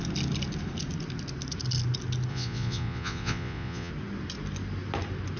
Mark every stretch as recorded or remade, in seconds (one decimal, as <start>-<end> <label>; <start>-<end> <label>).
0.0-2.3 recorded; 2.3-3.9 remade; 3.9-5.4 recorded